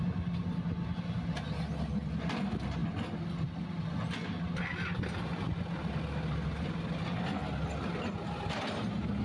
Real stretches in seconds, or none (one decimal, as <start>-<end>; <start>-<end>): 0.0-9.2